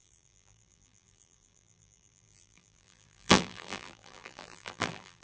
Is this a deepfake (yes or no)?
yes